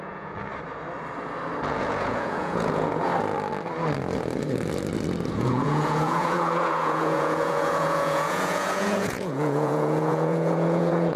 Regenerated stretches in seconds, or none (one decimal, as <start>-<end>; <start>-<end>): 0.0-0.5; 1.8-3.1; 5.3-11.2